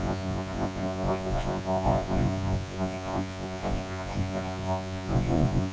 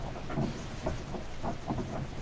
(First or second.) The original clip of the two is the second